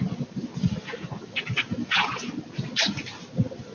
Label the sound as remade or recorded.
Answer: recorded